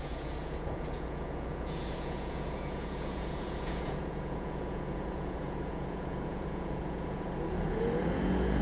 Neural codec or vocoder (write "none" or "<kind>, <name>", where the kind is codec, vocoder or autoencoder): vocoder, Vocos